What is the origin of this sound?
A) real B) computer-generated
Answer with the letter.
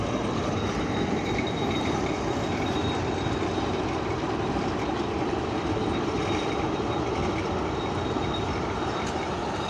B